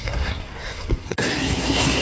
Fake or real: fake